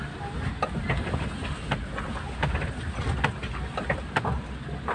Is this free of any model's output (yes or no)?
yes